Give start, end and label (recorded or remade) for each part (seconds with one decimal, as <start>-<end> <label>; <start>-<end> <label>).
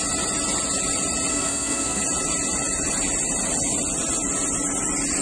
0.0-1.3 recorded; 1.3-2.0 remade; 2.0-5.2 recorded